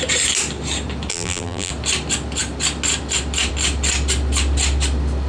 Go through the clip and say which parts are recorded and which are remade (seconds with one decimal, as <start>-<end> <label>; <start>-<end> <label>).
0.0-1.1 recorded; 1.1-1.7 remade; 1.7-5.3 recorded